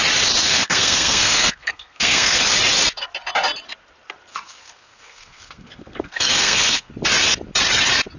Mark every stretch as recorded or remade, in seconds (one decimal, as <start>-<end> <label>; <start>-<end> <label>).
0.0-0.4 recorded; 0.4-2.4 remade; 2.4-4.3 recorded; 4.3-6.9 remade; 6.9-8.2 recorded